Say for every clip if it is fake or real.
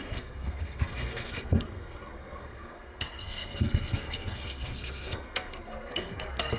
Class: fake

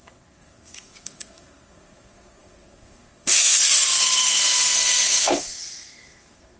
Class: fake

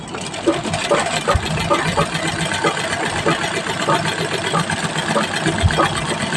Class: real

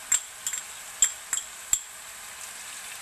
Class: real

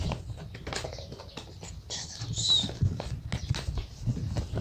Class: real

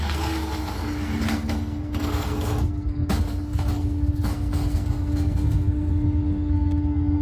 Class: fake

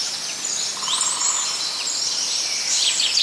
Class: real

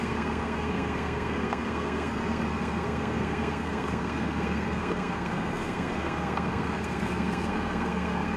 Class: fake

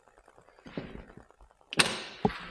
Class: real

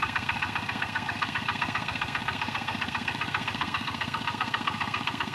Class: fake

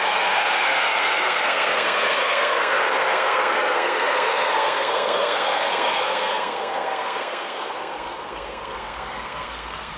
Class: fake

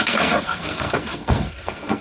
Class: fake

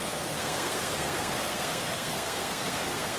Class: fake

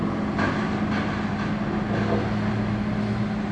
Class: real